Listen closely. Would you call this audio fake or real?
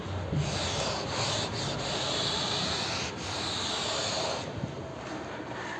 real